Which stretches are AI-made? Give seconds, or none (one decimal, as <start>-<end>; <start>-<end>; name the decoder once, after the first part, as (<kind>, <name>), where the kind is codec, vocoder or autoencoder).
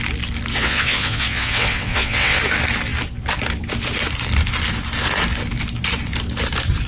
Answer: 0.5-2.4 (vocoder, WaveNeXt)